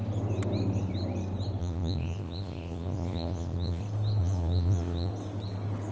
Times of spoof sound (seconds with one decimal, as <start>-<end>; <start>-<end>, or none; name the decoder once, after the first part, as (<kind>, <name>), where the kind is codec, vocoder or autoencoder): 1.6-3.8 (vocoder, Vocos); 4.2-5.1